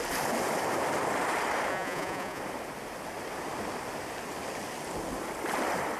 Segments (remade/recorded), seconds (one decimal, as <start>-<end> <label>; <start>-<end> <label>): 0.0-1.7 recorded; 1.7-2.4 remade; 2.4-6.0 recorded